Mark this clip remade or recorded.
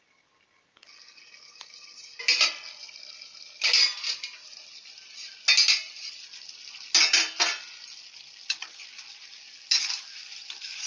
recorded